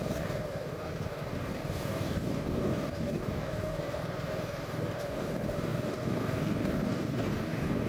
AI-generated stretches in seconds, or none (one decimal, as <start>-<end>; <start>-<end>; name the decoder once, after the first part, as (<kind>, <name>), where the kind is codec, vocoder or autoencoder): 0.0-7.9 (codec, DAC)